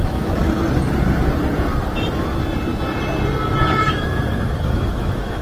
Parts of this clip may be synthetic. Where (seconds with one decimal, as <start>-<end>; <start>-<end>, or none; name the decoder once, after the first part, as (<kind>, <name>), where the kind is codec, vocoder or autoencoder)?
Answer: 0.0-0.4 (autoencoder, DAC-VAE); 3.6-5.4